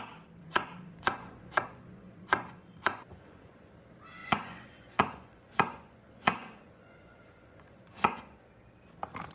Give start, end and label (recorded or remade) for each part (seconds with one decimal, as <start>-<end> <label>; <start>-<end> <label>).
0.0-0.4 recorded; 0.4-3.7 remade; 3.7-4.2 recorded; 4.2-8.5 remade; 8.5-9.3 recorded